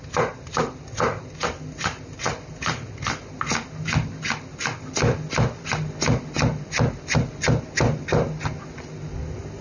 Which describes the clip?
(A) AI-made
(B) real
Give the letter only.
B